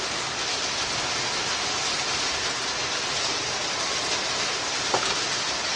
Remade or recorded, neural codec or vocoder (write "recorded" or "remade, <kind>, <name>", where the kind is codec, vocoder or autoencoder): recorded